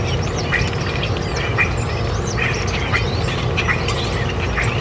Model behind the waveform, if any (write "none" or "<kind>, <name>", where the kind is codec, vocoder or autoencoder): none